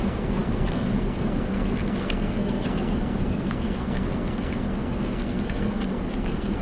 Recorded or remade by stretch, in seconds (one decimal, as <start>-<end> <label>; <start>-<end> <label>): 0.0-6.6 remade